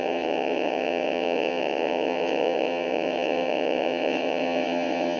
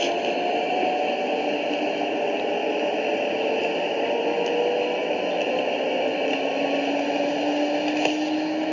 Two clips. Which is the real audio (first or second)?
second